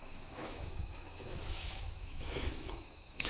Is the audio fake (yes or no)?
yes